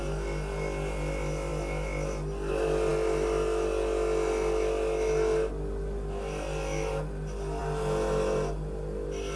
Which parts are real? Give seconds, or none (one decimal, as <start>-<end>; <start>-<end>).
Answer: 0.0-9.4